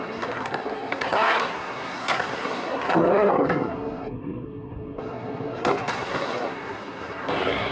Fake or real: fake